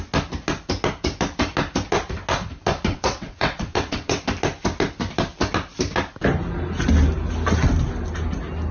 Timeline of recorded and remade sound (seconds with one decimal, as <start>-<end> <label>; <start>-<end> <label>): 0.0-2.9 recorded; 2.9-4.2 remade; 4.2-8.7 recorded